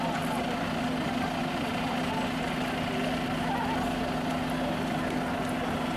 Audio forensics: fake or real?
real